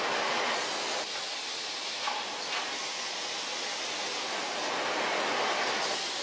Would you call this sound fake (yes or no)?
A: no